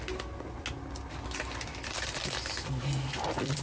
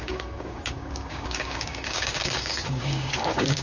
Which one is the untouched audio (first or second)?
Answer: first